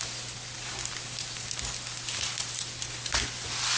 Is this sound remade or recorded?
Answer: recorded